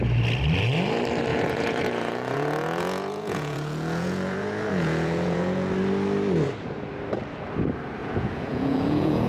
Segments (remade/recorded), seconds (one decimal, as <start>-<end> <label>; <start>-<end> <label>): 0.0-1.3 recorded; 1.3-5.7 remade; 5.7-8.0 recorded; 8.0-9.3 remade